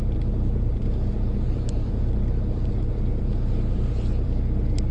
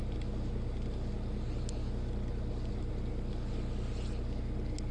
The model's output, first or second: first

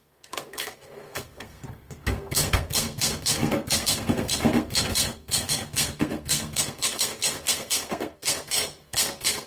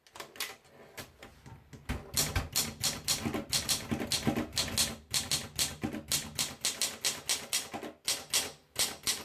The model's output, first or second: first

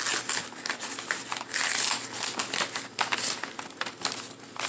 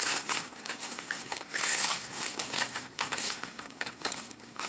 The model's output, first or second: second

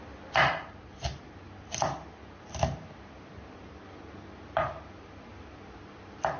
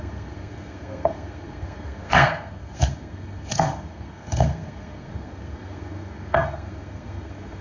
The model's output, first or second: second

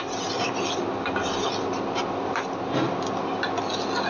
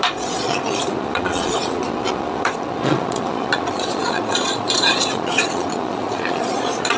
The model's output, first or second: second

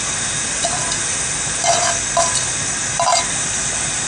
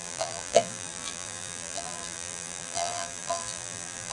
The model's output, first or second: second